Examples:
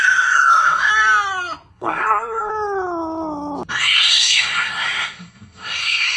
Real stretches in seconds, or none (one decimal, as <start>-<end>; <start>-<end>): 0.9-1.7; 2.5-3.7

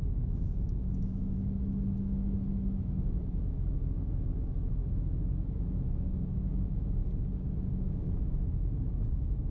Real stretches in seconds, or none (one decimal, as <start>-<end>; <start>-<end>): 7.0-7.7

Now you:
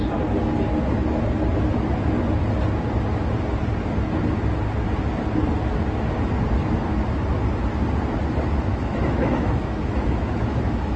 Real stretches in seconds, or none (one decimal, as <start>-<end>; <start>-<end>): 0.0-8.7

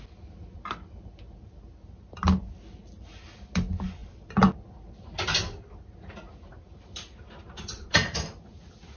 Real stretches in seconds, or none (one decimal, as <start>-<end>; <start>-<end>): 0.0-9.0

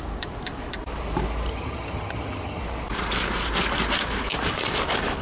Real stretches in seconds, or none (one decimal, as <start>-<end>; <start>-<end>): 0.0-1.5; 2.6-5.2

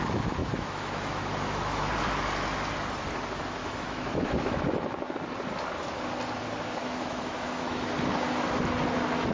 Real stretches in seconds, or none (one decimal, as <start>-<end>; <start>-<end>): 0.0-0.4; 1.9-3.6; 5.1-6.8; 7.9-9.3

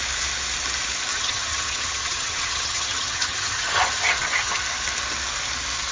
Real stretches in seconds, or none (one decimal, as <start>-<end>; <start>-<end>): 0.0-1.1; 4.6-5.9